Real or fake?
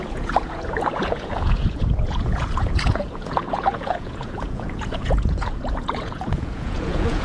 fake